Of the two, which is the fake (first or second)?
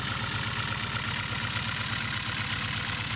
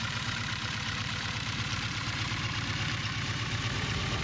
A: second